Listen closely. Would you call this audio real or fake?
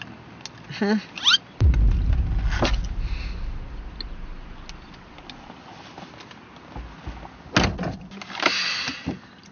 real